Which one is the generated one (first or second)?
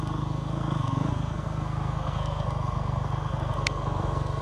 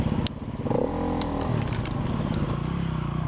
first